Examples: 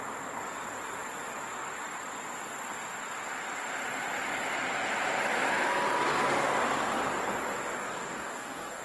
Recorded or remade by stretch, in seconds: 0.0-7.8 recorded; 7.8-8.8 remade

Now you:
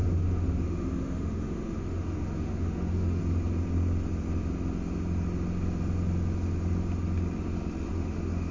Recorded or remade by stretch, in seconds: 0.0-3.2 remade; 3.2-7.9 recorded; 7.9-8.5 remade